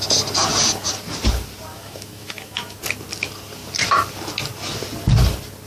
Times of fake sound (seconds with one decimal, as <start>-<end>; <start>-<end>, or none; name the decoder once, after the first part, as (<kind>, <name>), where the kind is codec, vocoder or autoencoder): 1.7-2.8 (autoencoder, DAC-VAE)